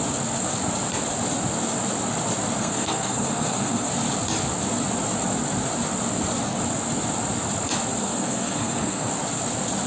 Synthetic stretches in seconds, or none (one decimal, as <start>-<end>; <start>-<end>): 2.6-3.9; 8.0-9.1